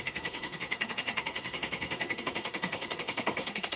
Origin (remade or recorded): remade